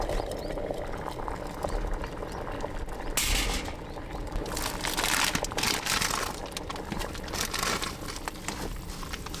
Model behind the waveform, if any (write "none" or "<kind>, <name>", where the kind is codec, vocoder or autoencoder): none